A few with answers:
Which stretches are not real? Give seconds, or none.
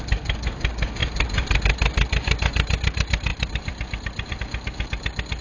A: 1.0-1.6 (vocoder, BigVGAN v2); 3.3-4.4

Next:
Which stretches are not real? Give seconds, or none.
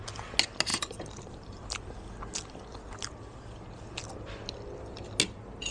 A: 0.7-1.7 (vocoder, BigVGAN v2)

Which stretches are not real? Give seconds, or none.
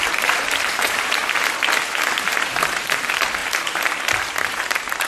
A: 0.0-1.2 (vocoder, BigVGAN v2); 2.5-3.4; 4.0-5.1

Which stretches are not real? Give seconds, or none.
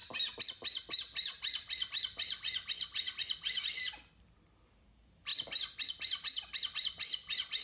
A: 4.6-5.3 (vocoder, BigVGAN v2); 5.9-7.6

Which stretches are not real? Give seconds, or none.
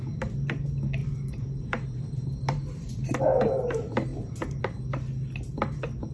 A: 1.0-3.2 (vocoder, BigVGAN v2); 4.1-4.6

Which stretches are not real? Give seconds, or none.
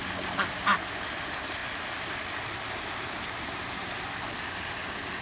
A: none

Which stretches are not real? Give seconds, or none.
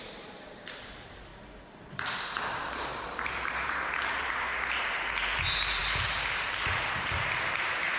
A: 0.0-1.3 (vocoder, BigVGAN v2); 1.9-2.9; 4.0-8.0